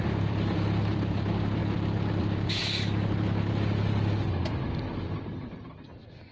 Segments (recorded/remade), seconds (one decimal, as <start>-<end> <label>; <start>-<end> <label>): 0.0-1.6 remade; 1.6-2.2 recorded; 2.2-2.6 remade; 2.6-5.1 recorded; 5.1-6.3 remade